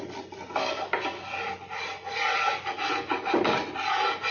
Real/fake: real